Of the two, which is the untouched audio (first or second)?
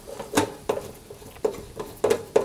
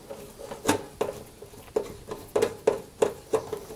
second